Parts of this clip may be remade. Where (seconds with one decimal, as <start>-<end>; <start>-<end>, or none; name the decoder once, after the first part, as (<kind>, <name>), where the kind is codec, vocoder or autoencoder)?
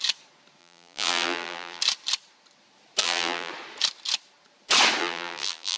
0.6-1.8 (vocoder, BigVGAN v2); 3.0-3.5; 5.0-5.8